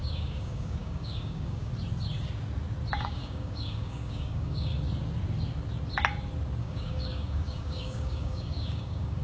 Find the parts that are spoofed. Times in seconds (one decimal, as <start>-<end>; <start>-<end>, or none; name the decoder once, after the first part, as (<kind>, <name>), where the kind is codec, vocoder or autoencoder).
0.0-1.7 (codec, DAC); 3.0-4.7; 6.6-9.2

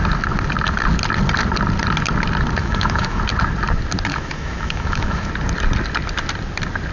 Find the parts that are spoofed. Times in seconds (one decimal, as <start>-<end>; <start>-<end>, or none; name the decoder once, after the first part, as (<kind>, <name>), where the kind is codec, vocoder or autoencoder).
2.6-3.2 (autoencoder, DAC-VAE); 4.1-5.3